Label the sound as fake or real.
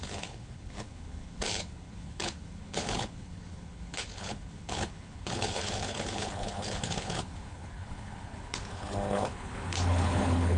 fake